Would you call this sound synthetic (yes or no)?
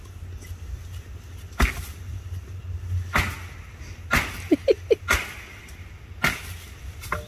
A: no